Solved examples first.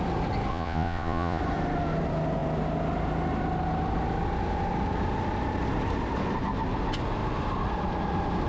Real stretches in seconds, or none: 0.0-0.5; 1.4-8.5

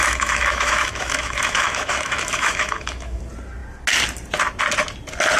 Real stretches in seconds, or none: 3.2-5.4

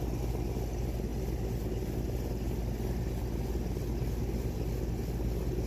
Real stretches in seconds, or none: 0.0-5.7